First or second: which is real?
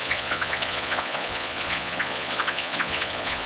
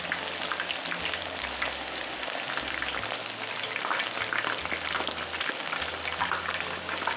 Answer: second